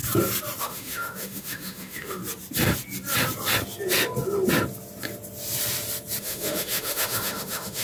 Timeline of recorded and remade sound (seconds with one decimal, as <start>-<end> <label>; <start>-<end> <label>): 0.0-0.6 recorded; 0.6-2.2 remade; 2.2-6.2 recorded; 6.2-7.8 remade